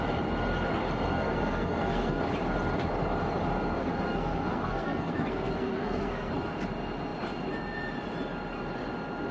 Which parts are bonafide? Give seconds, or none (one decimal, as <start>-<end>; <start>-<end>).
0.0-1.1; 2.2-3.8; 6.3-9.3

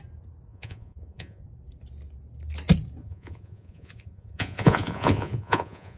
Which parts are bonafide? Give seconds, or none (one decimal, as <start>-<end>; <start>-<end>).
0.0-0.5; 1.4-3.0